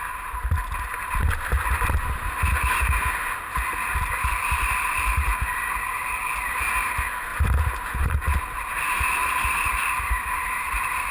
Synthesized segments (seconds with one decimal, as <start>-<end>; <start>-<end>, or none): none